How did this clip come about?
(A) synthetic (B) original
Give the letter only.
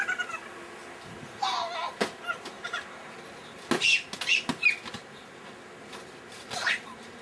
B